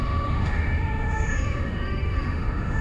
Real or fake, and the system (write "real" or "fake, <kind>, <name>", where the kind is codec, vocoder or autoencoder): fake, autoencoder, DAC-VAE